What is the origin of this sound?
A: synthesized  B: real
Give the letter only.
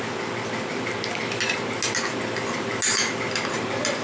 B